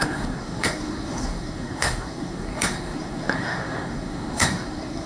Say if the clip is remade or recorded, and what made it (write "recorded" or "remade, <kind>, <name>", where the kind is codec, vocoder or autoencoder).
remade, codec, SNAC